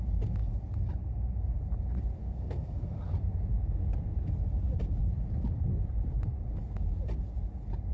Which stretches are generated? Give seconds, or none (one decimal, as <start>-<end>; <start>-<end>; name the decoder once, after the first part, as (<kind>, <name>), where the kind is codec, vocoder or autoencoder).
2.2-3.1 (codec, SNAC)